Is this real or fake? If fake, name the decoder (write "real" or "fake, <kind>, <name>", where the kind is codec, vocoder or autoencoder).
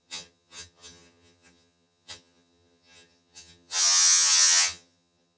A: fake, vocoder, HiFi-GAN